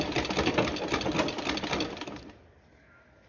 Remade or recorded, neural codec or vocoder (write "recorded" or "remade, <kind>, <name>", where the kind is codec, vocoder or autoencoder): recorded